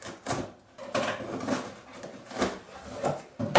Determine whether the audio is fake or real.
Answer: real